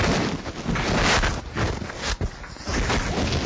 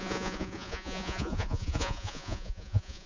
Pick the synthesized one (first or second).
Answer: second